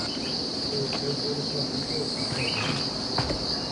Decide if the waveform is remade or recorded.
recorded